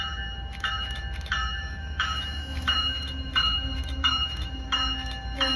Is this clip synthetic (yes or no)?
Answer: yes